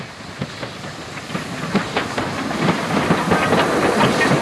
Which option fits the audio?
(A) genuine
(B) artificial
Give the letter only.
A